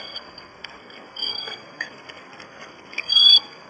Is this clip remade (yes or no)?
yes